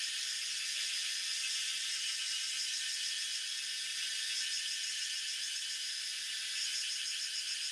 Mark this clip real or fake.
real